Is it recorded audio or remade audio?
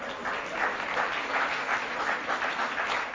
recorded